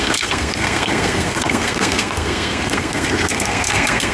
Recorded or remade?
remade